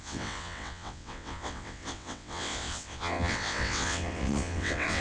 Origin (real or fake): fake